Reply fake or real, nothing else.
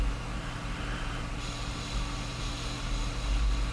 real